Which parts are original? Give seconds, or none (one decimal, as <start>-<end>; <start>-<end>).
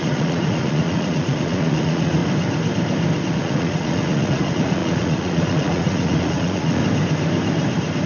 2.2-3.3; 6.8-8.1